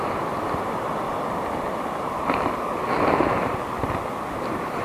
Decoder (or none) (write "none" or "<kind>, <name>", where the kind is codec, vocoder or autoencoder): none